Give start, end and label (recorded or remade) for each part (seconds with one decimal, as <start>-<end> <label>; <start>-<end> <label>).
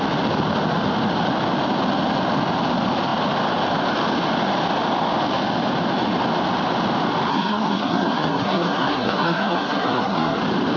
0.0-7.3 recorded; 7.3-10.4 remade; 10.4-10.8 recorded